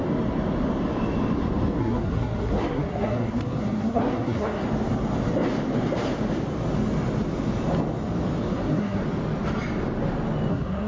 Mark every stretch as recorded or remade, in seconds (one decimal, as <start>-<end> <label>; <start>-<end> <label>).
0.0-1.8 recorded; 1.8-4.6 remade; 4.6-8.5 recorded; 8.5-9.0 remade; 9.0-10.5 recorded; 10.5-10.9 remade